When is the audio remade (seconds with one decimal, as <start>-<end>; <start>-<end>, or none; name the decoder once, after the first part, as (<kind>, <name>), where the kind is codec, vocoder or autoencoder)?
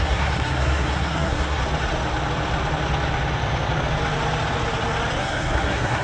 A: 0.0-1.6 (codec, SNAC); 5.2-6.0